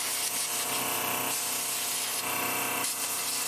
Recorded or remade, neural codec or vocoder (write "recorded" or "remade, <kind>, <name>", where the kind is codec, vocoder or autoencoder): recorded